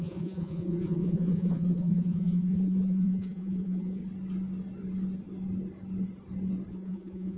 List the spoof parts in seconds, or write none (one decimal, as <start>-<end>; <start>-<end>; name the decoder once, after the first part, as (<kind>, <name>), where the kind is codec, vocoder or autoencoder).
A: 0.0-4.0 (vocoder, Vocos); 6.7-7.4